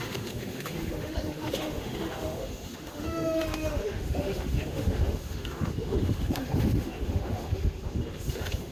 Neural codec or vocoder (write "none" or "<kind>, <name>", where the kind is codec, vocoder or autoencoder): autoencoder, DAC-VAE